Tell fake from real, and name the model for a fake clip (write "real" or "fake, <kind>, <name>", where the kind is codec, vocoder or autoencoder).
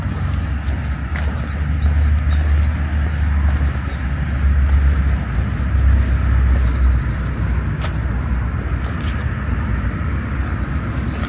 real